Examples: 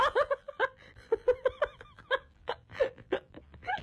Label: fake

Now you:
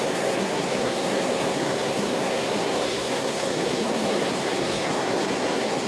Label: fake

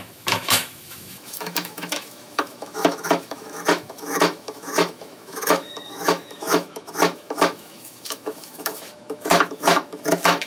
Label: fake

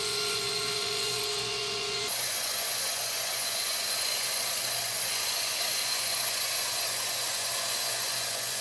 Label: fake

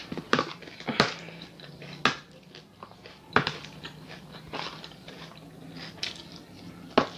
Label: real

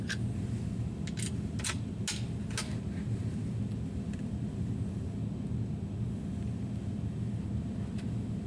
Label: real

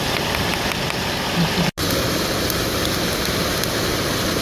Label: real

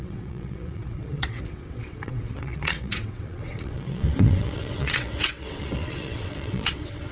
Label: fake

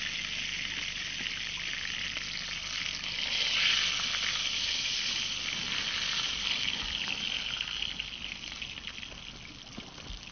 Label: real